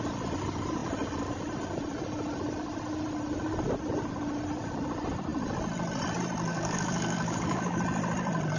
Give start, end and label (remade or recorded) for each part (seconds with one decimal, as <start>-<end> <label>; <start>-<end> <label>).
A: 0.0-6.5 recorded; 6.5-7.8 remade; 7.8-8.6 recorded